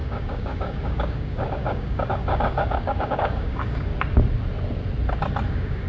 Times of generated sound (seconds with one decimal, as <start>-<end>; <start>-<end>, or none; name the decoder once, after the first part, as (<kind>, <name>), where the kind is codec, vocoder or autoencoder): 0.0-3.9 (codec, DAC); 5.5-5.9